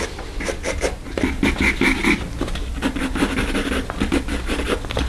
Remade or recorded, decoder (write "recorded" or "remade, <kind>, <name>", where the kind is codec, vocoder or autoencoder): recorded